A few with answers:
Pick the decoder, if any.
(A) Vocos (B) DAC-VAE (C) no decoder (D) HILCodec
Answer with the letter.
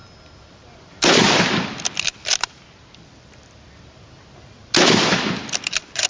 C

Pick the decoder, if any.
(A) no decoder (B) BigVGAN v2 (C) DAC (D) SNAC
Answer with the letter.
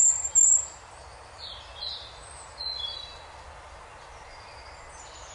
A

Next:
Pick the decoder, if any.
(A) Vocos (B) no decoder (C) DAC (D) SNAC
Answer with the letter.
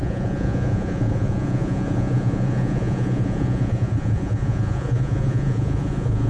A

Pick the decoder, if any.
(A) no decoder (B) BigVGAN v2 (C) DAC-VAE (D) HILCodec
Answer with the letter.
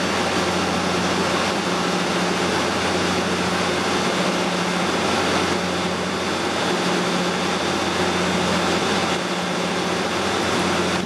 A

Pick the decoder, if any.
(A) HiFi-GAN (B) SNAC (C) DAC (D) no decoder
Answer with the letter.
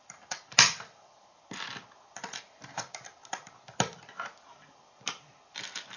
D